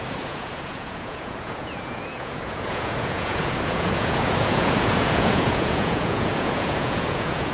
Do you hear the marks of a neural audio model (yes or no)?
yes